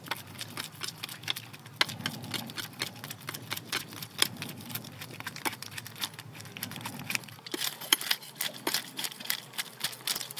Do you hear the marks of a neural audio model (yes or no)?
no